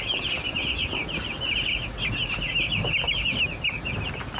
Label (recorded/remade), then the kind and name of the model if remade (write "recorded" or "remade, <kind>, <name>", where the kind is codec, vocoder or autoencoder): recorded